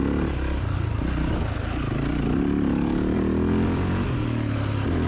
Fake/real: real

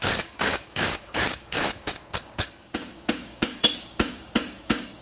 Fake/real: fake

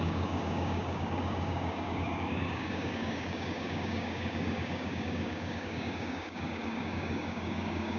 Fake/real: fake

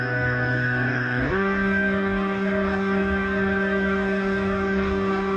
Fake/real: fake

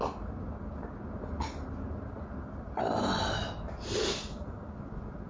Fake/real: real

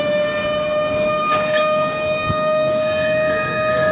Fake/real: fake